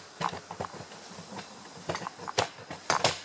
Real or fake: real